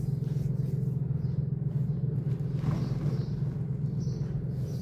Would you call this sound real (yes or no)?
yes